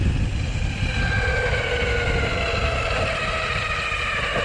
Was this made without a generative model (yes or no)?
yes